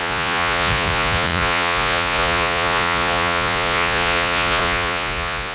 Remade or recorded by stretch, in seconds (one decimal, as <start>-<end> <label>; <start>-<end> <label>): 0.0-5.5 remade